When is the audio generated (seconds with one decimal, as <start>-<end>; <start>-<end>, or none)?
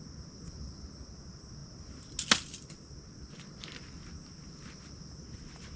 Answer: none